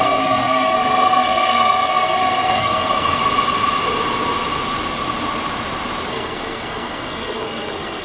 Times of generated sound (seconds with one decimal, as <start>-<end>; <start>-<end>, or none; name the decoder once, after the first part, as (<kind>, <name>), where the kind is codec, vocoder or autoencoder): 0.0-3.2 (codec, SNAC); 6.1-8.0